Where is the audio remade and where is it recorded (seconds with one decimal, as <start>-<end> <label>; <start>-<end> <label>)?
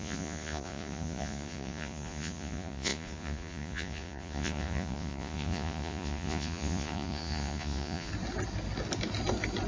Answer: 0.0-8.1 remade; 8.1-9.7 recorded